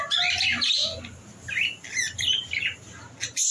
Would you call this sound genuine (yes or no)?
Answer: yes